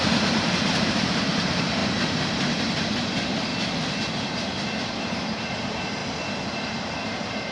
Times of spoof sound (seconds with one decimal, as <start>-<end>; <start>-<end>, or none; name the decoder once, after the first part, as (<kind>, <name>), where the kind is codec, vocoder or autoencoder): 0.0-1.8 (vocoder, BigVGAN v2); 2.6-3.5; 4.1-6.0; 6.5-7.5